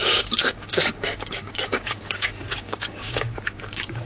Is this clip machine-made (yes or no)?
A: yes